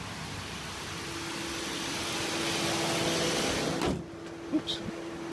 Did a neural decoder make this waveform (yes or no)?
no